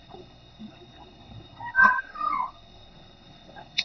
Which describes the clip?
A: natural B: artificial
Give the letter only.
B